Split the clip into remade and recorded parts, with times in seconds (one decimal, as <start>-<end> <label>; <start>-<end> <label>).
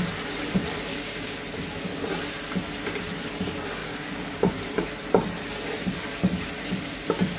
0.0-0.9 recorded; 0.9-1.4 remade; 1.4-3.8 recorded; 3.8-4.5 remade; 4.5-7.4 recorded